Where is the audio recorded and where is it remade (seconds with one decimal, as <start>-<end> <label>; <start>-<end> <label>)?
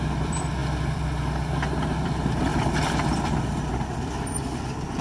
0.0-5.0 remade